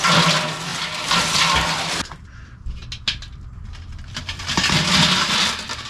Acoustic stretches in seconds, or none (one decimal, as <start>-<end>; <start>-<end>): 0.0-5.9